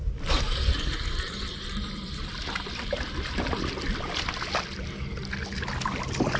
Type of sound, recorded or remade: recorded